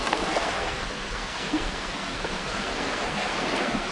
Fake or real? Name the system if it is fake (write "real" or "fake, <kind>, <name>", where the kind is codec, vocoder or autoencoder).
fake, codec, SNAC